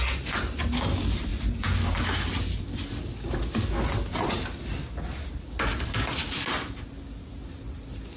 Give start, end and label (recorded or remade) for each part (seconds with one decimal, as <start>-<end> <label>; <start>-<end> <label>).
0.0-8.2 recorded